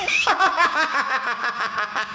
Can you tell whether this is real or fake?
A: fake